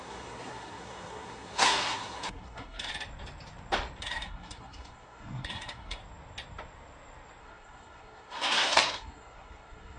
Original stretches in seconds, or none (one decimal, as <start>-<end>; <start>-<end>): 2.9-4.0; 6.0-7.4